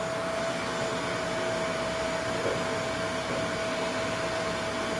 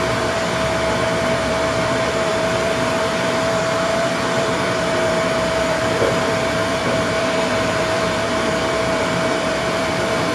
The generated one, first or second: second